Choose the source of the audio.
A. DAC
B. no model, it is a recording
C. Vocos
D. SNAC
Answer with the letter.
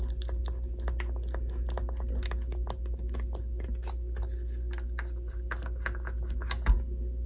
B